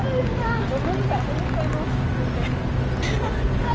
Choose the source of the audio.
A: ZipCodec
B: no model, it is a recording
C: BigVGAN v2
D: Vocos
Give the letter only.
B